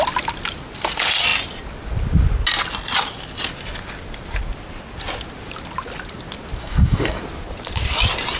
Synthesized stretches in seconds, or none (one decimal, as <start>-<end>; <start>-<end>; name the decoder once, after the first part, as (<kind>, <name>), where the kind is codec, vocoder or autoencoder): 6.6-7.2 (codec, DAC)